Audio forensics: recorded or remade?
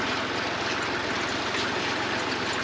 recorded